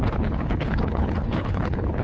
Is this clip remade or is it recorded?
remade